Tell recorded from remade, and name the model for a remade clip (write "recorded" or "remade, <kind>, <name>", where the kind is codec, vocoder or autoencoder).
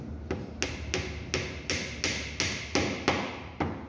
recorded